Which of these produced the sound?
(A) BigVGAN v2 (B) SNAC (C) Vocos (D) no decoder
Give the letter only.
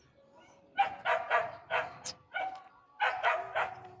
D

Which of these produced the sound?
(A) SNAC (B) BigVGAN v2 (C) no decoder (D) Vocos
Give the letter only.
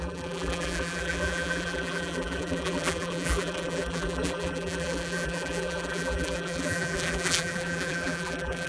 B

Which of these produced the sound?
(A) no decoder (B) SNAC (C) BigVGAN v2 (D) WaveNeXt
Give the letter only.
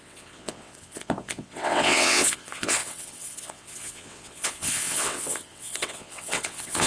D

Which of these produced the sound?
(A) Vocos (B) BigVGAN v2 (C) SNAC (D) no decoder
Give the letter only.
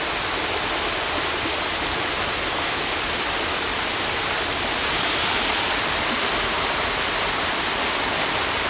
D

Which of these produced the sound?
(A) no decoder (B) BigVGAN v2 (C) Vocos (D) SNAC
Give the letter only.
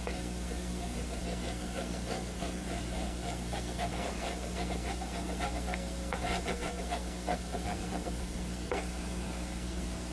D